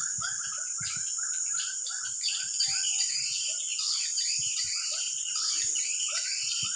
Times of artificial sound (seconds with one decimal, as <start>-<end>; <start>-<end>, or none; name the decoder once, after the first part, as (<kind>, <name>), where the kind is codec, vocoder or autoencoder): 0.0-0.7 (vocoder, BigVGAN v2); 1.5-6.8